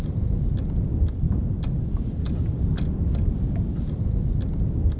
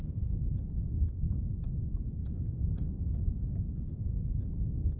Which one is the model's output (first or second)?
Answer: second